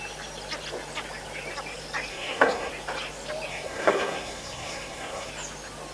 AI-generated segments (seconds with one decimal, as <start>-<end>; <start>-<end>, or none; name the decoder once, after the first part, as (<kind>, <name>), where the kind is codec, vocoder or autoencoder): 2.1-2.7 (codec, SNAC); 3.5-5.3